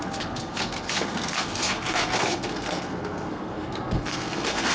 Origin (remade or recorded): remade